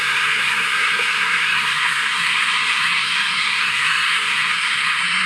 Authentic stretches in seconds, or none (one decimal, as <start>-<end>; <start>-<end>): none